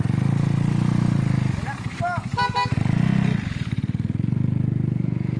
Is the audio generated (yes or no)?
no